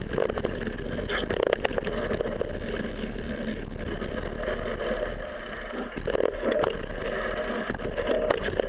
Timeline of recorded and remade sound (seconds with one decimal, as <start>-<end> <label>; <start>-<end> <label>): 0.0-8.7 recorded